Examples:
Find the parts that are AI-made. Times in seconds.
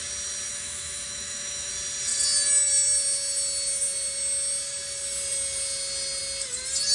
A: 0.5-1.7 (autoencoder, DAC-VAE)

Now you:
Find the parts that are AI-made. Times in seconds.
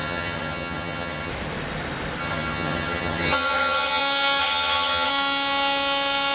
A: 0.0-1.3 (vocoder, HiFi-GAN); 2.2-4.0; 4.4-5.1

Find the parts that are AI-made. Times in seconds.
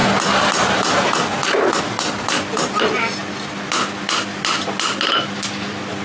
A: none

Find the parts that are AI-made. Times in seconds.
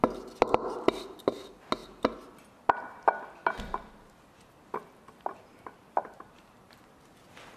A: 5.3-6.8 (vocoder, BigVGAN v2)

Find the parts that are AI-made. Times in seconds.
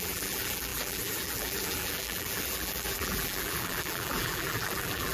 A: 0.0-5.1 (vocoder, BigVGAN v2)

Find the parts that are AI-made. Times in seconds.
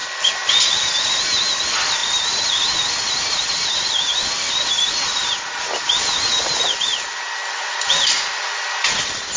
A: 2.0-4.6 (vocoder, BigVGAN v2); 6.9-7.4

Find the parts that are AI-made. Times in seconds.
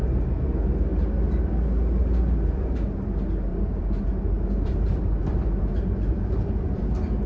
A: 3.5-6.5 (vocoder, BigVGAN v2)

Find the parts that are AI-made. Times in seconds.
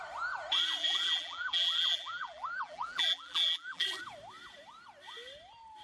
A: 0.8-4.0 (vocoder, BigVGAN v2)